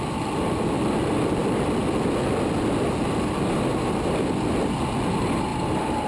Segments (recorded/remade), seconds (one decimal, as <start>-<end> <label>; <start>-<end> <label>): 0.0-5.5 recorded; 5.5-6.1 remade